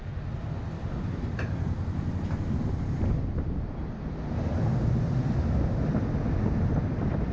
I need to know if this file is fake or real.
real